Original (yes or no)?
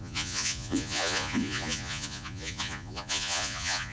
no